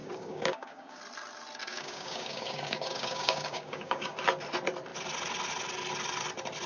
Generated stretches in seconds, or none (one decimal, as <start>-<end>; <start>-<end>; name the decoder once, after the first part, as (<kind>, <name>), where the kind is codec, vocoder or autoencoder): 0.0-1.0 (codec, DAC); 1.6-4.1